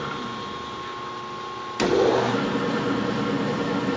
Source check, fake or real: real